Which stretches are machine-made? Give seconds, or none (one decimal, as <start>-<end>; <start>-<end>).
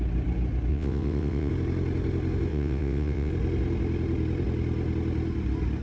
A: 0.7-1.5; 2.5-3.3